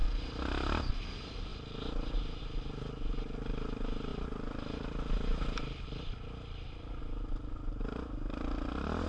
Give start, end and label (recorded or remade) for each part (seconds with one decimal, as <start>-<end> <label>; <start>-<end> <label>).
0.0-4.1 recorded; 4.1-7.0 remade; 7.0-9.1 recorded